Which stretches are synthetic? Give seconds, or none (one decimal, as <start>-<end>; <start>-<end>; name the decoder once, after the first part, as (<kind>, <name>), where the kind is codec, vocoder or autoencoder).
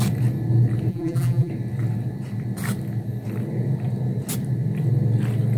0.9-1.5 (vocoder, BigVGAN v2)